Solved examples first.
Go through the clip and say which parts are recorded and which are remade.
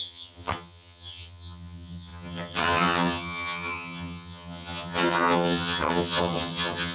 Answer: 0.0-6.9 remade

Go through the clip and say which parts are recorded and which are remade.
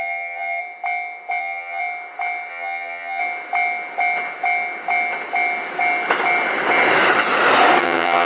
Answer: 0.0-0.6 remade; 0.6-1.4 recorded; 1.4-1.8 remade; 1.8-2.5 recorded; 2.5-3.2 remade; 3.2-7.8 recorded; 7.8-8.3 remade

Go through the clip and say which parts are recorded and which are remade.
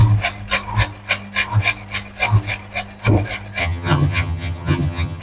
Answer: 0.0-3.6 recorded; 3.6-5.2 remade